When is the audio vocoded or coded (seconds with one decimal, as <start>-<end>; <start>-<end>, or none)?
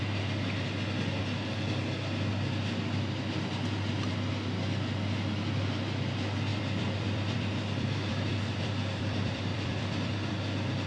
6.5-10.3